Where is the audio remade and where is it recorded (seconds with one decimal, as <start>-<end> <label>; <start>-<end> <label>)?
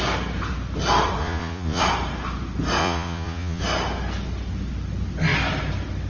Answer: 0.0-1.2 recorded; 1.2-1.8 remade; 1.8-2.8 recorded; 2.8-3.6 remade; 3.6-6.1 recorded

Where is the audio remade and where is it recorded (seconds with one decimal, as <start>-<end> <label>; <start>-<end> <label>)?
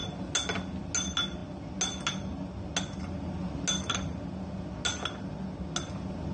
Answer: 0.0-6.3 recorded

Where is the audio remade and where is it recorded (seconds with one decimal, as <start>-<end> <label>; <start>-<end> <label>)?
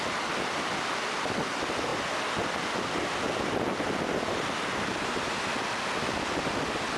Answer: 0.0-7.0 recorded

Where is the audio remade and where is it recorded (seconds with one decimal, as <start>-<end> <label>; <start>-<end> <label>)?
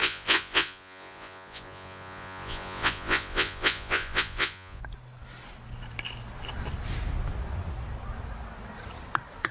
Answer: 0.0-4.8 remade; 4.8-9.5 recorded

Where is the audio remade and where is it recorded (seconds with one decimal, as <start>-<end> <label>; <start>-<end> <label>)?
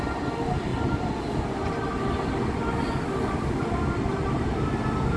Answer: 0.0-5.2 recorded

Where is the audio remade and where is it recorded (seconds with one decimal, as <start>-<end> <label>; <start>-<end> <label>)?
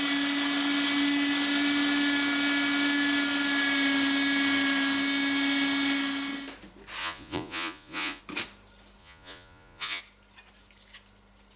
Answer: 0.0-7.0 recorded; 7.0-8.2 remade; 8.2-9.0 recorded; 9.0-10.0 remade; 10.0-11.6 recorded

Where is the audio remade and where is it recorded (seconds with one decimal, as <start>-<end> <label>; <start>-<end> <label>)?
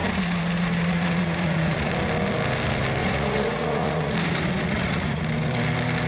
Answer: 0.0-1.9 remade; 1.9-3.0 recorded; 3.0-5.2 remade; 5.2-6.1 recorded